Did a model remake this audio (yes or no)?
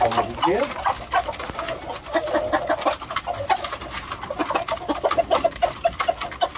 no